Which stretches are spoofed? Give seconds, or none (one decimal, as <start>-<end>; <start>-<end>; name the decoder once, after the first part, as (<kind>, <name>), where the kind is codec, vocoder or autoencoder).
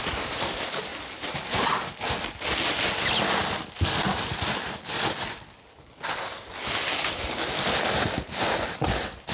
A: 0.0-0.9 (vocoder, BigVGAN v2); 4.5-9.3